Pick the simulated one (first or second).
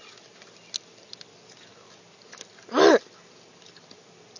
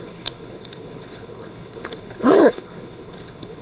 second